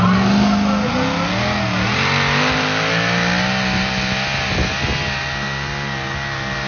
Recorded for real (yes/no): yes